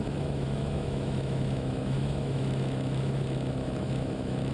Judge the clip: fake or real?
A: fake